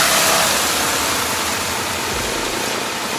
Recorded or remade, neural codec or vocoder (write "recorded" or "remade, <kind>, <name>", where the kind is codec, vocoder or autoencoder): recorded